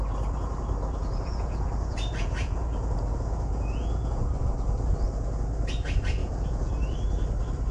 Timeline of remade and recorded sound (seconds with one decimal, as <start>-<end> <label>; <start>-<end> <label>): 0.0-1.0 recorded; 1.0-4.3 remade; 4.3-6.2 recorded; 6.2-6.7 remade; 6.7-7.7 recorded